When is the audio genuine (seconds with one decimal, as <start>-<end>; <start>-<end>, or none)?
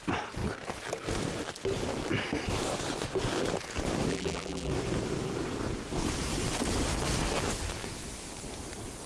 0.0-4.1; 4.7-9.1